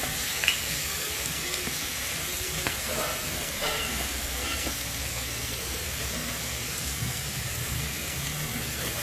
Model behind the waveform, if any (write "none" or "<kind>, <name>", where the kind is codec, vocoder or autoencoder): codec, SNAC